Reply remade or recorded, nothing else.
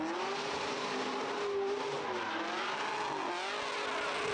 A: recorded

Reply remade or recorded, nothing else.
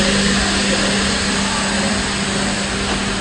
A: recorded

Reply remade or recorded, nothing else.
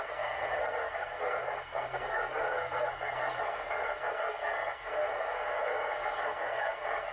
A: remade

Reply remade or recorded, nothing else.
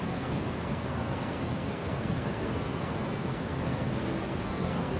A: remade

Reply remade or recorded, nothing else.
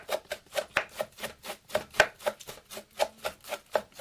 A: recorded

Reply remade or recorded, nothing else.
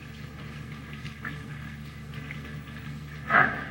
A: remade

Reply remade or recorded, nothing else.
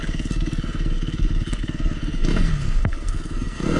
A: remade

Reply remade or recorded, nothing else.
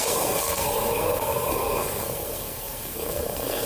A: remade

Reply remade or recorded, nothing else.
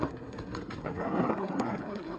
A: remade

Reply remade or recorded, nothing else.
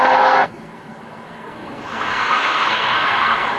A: remade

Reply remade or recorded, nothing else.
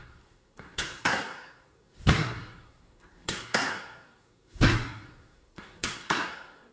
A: remade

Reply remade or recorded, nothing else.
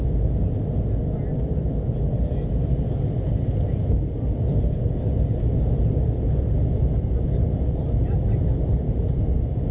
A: recorded